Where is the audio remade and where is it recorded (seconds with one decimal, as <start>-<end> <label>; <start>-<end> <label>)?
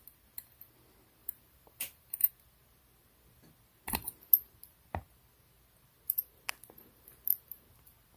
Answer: 0.0-1.2 recorded; 1.2-2.3 remade; 2.3-8.2 recorded